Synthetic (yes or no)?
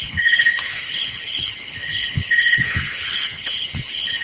yes